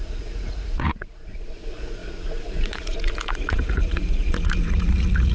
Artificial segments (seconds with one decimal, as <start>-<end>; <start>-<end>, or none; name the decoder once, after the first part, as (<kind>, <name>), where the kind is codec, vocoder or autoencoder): 0.0-5.3 (vocoder, Vocos)